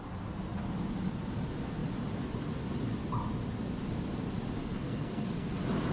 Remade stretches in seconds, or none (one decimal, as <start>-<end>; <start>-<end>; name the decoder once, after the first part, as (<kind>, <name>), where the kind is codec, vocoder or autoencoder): 4.6-5.5 (codec, SNAC)